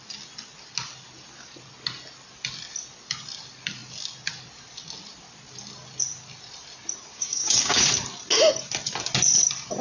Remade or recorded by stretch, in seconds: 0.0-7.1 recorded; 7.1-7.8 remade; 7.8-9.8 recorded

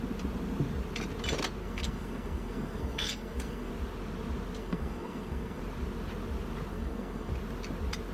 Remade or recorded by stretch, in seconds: 0.0-1.6 recorded; 1.6-3.7 remade; 3.7-4.6 recorded; 4.6-5.6 remade; 5.6-6.7 recorded; 6.7-7.3 remade; 7.3-8.1 recorded

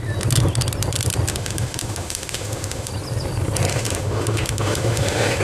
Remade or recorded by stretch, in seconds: 0.0-1.3 recorded; 1.3-2.9 remade; 2.9-3.7 recorded; 3.7-5.4 remade

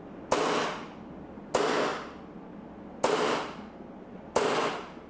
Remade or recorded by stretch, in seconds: 0.0-5.1 recorded

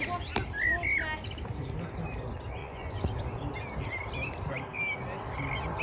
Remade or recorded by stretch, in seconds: 0.0-2.6 recorded; 2.6-3.1 remade; 3.1-5.8 recorded

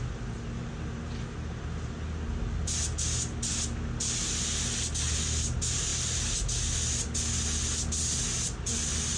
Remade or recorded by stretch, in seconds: 0.0-9.2 recorded

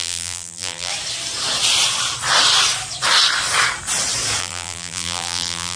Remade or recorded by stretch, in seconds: 0.0-0.9 remade; 0.9-4.4 recorded; 4.4-5.8 remade